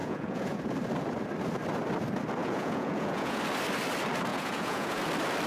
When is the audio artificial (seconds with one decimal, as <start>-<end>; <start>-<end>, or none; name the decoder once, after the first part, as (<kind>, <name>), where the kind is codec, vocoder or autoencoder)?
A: 0.0-0.6 (vocoder, Vocos); 2.4-3.4; 4.3-5.0

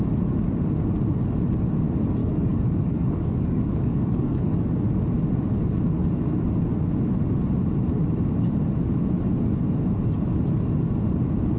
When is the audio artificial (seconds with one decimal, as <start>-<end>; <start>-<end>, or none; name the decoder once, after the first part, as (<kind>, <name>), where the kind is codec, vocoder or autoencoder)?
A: 2.2-4.7 (codec, DAC)

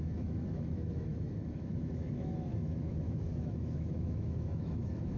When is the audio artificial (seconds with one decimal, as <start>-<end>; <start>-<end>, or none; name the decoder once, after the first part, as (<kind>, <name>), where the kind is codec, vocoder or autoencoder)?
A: 0.0-5.2 (autoencoder, DAC-VAE)

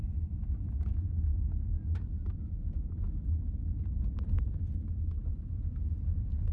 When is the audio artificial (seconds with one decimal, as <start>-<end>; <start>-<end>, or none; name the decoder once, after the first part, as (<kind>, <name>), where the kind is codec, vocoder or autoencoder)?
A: 5.9-6.5 (vocoder, BigVGAN v2)

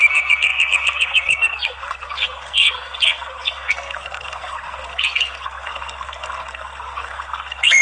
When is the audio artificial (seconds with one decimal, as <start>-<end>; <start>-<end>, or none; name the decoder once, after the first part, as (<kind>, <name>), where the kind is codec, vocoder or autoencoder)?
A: 0.0-7.8 (codec, SNAC)

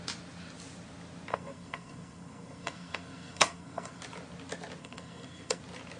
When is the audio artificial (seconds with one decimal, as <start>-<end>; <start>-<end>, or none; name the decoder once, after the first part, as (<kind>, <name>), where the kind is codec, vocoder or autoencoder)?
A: 1.3-4.0 (codec, SNAC); 4.8-5.6

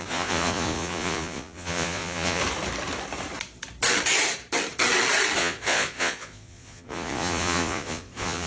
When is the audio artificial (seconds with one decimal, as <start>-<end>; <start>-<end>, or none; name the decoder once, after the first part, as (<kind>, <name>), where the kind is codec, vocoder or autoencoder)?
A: 0.0-2.4 (vocoder, Vocos); 5.4-8.5